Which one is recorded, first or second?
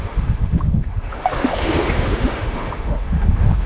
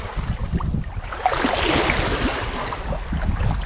second